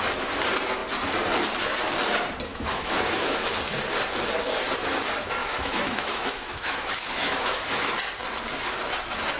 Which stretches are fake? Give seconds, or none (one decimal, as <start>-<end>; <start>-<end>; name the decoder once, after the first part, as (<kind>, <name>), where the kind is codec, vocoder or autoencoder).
2.5-3.5 (autoencoder, DAC-VAE); 5.4-7.9